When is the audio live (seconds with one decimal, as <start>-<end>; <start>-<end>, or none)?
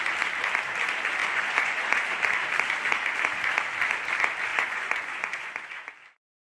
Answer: 0.0-1.2; 2.0-4.5; 5.9-6.6